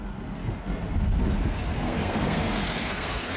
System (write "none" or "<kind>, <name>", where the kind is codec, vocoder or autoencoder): codec, SNAC